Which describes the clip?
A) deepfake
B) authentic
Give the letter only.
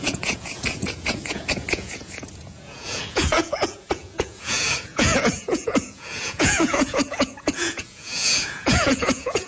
A